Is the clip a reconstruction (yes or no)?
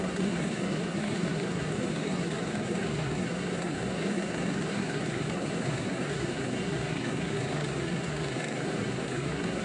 yes